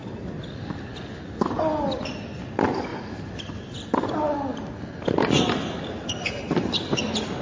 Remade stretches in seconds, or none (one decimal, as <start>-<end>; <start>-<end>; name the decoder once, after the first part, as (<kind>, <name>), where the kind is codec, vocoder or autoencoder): none